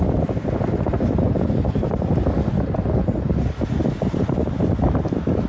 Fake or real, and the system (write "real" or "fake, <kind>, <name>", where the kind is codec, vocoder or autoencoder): real